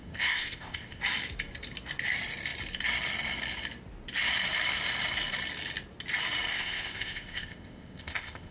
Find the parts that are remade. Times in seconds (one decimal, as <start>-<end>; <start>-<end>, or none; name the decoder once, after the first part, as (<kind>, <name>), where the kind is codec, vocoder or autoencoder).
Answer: 0.0-1.0 (codec, ZipCodec); 6.5-8.5